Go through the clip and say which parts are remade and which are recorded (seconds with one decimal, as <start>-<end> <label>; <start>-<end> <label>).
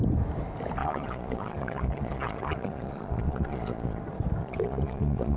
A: 0.0-0.8 recorded; 0.8-4.0 remade; 4.0-4.4 recorded; 4.4-5.4 remade